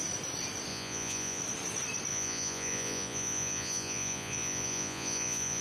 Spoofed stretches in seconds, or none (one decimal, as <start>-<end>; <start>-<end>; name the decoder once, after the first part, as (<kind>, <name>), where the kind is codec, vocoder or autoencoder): 0.7-1.4 (vocoder, Vocos); 2.1-5.6